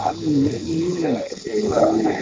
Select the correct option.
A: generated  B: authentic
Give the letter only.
A